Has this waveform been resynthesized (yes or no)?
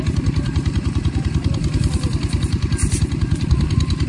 yes